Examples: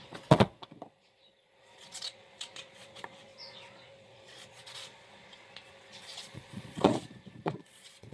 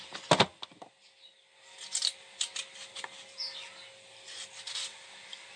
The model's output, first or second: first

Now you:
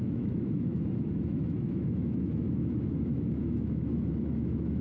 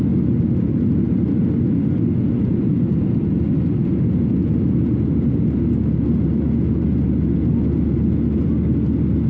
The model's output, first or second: first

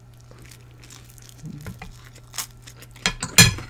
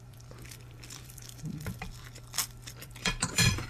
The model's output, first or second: second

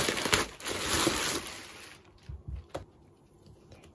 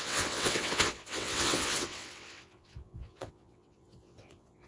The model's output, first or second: second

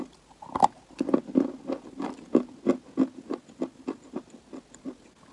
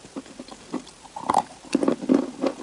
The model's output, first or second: second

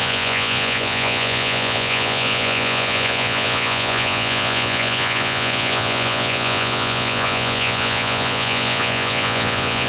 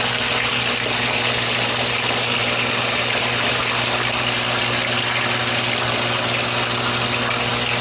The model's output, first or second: first